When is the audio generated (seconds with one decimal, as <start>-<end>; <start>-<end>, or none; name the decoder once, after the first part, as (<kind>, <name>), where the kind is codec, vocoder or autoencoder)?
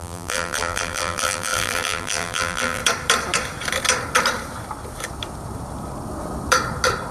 0.0-2.8 (vocoder, BigVGAN v2)